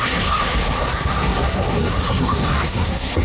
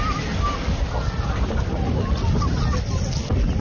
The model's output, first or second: first